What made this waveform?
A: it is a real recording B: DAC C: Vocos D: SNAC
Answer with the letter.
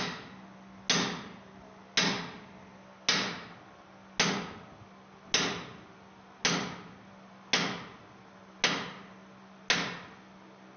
A